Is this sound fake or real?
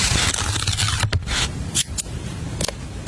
real